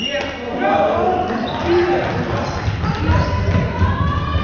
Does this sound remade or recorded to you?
recorded